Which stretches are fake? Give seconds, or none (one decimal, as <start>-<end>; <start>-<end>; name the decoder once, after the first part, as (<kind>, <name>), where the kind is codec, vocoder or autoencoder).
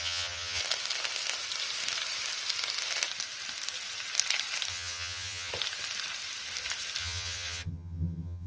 0.0-0.6 (vocoder, HiFi-GAN); 4.7-5.5; 7.0-8.5